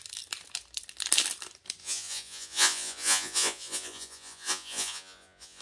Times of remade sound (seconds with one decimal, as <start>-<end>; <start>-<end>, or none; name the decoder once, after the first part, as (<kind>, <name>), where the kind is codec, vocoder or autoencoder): 1.8-5.6 (vocoder, Vocos)